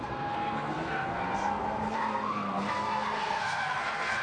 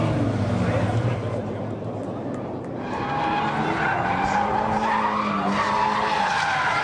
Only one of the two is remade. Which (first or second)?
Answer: first